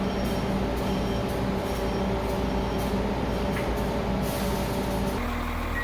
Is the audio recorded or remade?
recorded